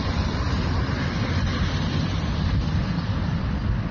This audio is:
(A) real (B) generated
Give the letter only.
B